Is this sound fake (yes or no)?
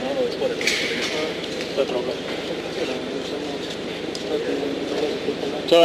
yes